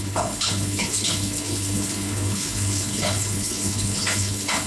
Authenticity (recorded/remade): remade